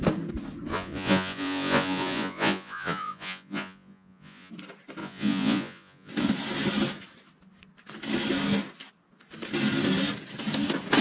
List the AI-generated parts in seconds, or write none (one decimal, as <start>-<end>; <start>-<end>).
0.7-4.5; 5.0-6.1